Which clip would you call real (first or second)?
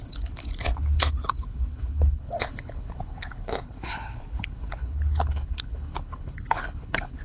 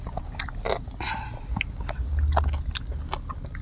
second